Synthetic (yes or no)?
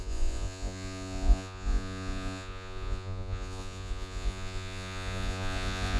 yes